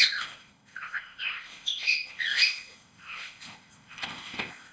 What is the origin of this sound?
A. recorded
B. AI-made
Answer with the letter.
B